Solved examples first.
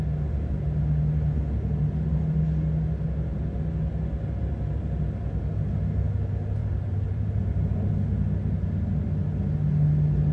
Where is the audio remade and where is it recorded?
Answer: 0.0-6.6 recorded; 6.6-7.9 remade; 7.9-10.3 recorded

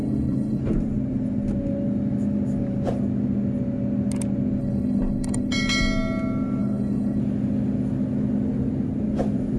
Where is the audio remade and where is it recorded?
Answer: 0.0-0.6 remade; 0.6-4.6 recorded; 4.6-5.5 remade; 5.5-6.6 recorded; 6.6-7.2 remade; 7.2-9.6 recorded

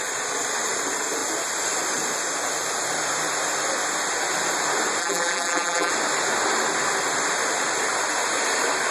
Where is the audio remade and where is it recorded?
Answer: 0.0-5.0 recorded; 5.0-5.9 remade; 5.9-8.9 recorded

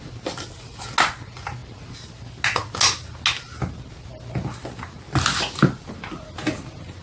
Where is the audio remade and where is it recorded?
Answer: 0.0-7.0 recorded

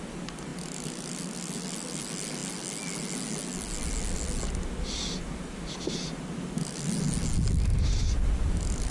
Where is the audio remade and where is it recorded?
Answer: 0.0-8.9 recorded

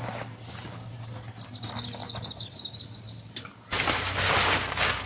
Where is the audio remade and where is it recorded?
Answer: 0.0-5.1 recorded

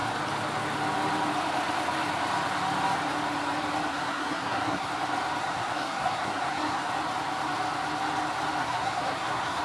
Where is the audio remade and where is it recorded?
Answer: 0.0-3.9 recorded; 3.9-4.9 remade; 4.9-5.4 recorded; 5.4-6.9 remade; 6.9-8.6 recorded; 8.6-9.6 remade

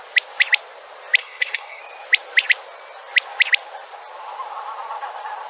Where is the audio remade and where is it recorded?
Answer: 0.0-1.2 recorded; 1.2-1.8 remade; 1.8-5.5 recorded